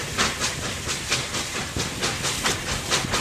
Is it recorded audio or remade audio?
recorded